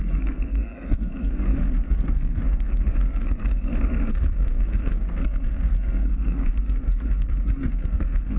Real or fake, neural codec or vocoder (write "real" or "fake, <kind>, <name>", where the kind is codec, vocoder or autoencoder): fake, codec, SNAC